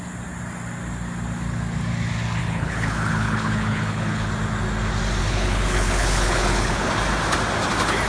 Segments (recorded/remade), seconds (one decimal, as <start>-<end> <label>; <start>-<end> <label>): 0.0-2.4 recorded; 2.4-4.3 remade; 4.3-5.2 recorded; 5.2-6.9 remade; 6.9-8.1 recorded